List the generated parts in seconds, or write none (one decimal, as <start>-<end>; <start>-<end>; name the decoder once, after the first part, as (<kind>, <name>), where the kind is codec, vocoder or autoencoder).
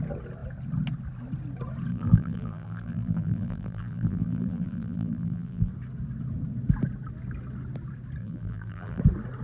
1.9-5.7 (vocoder, BigVGAN v2); 8.2-9.0